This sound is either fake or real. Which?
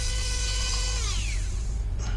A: fake